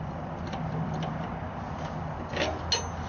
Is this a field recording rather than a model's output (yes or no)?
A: yes